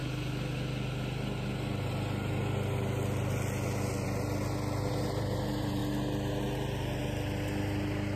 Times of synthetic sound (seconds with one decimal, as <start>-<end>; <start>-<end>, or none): 4.9-5.8